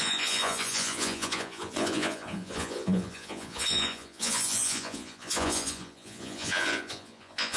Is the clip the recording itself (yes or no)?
no